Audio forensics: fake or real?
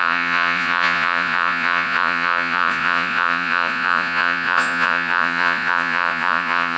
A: fake